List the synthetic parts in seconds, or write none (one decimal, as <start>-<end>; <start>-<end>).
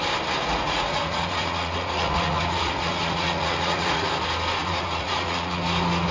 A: 0.4-4.1; 4.6-5.6